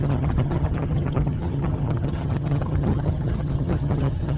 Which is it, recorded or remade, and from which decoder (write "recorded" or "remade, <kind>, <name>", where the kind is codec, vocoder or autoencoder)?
remade, vocoder, HiFi-GAN